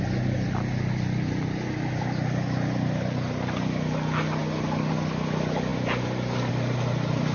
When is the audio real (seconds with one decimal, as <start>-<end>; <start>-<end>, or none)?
0.0-7.3